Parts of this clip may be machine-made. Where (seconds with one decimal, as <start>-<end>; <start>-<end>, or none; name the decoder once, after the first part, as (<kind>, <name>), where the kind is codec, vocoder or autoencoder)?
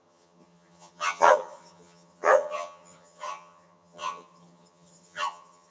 0.0-5.7 (vocoder, HiFi-GAN)